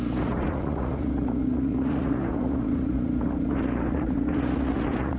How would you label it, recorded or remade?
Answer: remade